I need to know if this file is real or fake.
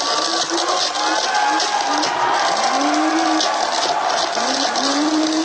real